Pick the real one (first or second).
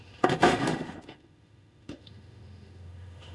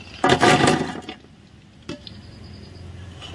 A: second